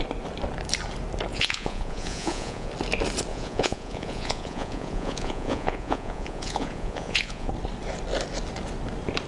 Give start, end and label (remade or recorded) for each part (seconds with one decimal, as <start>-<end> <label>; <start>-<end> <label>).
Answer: 0.0-1.3 recorded; 1.3-2.7 remade; 2.7-3.3 recorded; 3.3-7.5 remade; 7.5-9.3 recorded

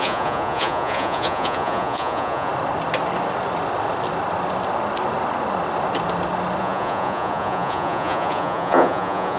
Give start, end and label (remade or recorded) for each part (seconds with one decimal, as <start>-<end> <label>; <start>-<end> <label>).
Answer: 0.0-2.5 remade; 2.5-6.6 recorded; 6.6-9.4 remade

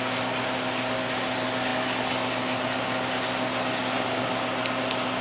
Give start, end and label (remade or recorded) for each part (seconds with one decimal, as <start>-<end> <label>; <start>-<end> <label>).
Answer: 0.0-5.2 recorded

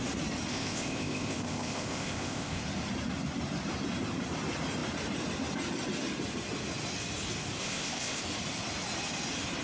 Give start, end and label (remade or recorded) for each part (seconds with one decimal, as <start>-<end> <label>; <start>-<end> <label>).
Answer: 0.0-0.5 recorded; 0.5-2.6 remade; 2.6-7.6 recorded; 7.6-8.2 remade; 8.2-9.6 recorded

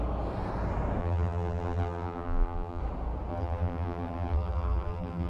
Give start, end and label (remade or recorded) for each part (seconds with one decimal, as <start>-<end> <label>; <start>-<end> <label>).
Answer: 0.0-1.0 recorded; 1.0-2.8 remade; 2.8-3.3 recorded; 3.3-5.3 remade

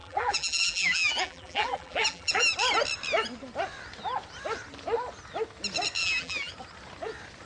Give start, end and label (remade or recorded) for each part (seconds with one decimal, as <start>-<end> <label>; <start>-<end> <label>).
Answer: 0.0-2.5 remade; 2.5-6.0 recorded; 6.0-6.5 remade; 6.5-7.5 recorded

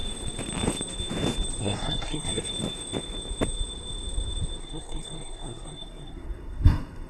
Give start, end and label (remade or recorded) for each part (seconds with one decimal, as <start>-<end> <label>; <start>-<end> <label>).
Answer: 0.0-1.6 recorded; 1.6-2.5 remade; 2.5-4.6 recorded; 4.6-7.1 remade

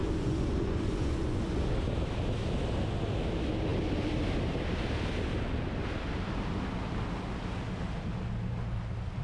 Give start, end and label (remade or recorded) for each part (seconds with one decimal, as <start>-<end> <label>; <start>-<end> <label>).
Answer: 0.0-1.7 remade; 1.7-9.2 recorded